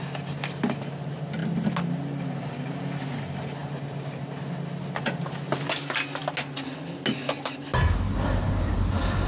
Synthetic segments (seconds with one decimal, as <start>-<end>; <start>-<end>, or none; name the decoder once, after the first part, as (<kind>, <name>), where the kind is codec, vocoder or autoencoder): none